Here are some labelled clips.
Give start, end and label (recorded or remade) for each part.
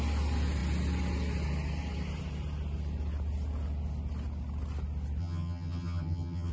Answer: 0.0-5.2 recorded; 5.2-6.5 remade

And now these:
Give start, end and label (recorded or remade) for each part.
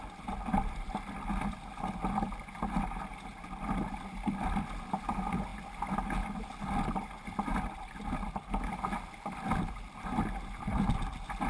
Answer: 0.0-11.5 recorded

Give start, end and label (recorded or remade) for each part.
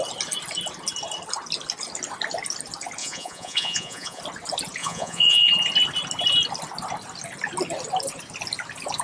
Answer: 0.0-3.0 recorded; 3.0-4.2 remade; 4.2-4.8 recorded; 4.8-5.5 remade; 5.5-9.0 recorded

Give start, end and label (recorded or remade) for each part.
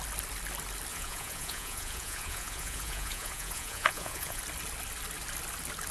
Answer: 0.0-0.9 recorded; 0.9-4.4 remade; 4.4-5.9 recorded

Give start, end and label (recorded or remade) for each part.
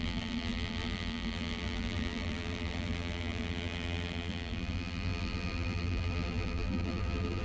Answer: 0.0-7.4 remade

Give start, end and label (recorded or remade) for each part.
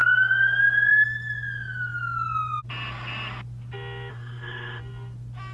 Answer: 0.0-4.1 recorded; 4.1-4.8 remade; 4.8-5.5 recorded